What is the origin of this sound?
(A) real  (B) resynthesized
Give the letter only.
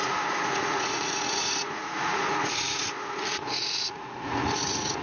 B